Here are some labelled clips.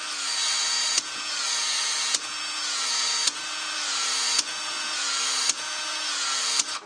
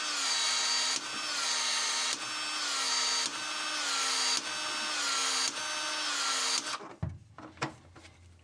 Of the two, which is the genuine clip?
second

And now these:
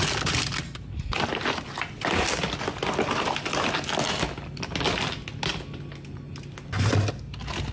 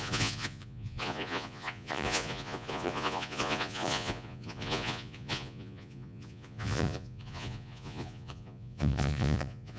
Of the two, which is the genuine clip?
first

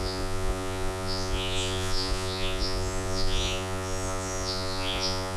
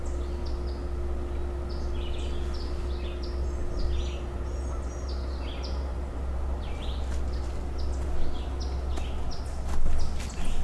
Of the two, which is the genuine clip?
second